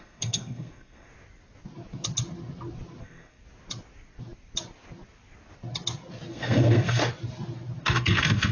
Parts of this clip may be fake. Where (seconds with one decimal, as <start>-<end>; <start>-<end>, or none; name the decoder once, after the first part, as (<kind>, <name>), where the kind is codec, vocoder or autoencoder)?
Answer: 0.0-1.1 (codec, SNAC); 3.0-3.4; 6.3-7.0; 7.8-8.5